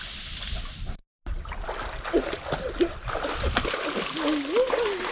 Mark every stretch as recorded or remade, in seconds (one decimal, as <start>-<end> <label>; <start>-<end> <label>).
0.0-5.1 recorded